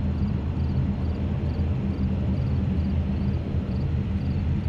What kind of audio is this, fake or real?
fake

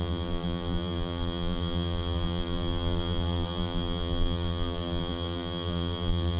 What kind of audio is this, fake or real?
fake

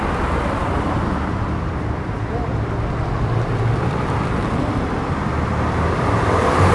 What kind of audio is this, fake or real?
fake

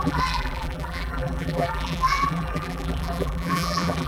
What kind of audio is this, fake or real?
fake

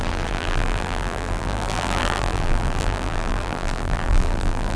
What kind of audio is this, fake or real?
fake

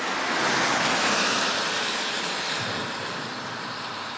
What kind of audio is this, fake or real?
fake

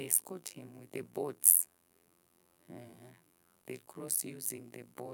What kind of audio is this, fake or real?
fake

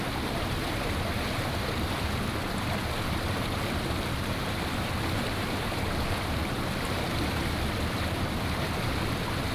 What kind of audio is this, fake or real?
real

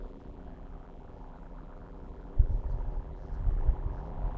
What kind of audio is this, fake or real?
fake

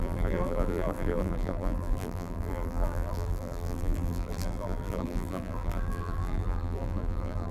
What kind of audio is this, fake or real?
fake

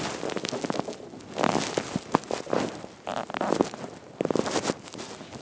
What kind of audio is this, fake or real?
fake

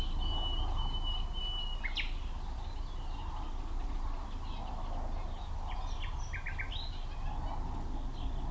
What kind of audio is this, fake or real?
real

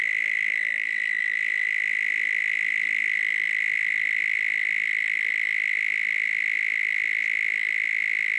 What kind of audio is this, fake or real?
fake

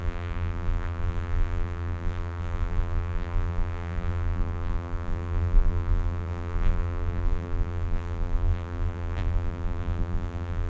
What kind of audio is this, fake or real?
fake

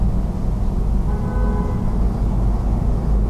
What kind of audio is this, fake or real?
real